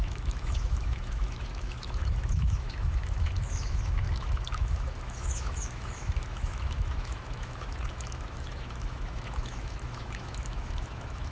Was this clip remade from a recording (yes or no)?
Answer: yes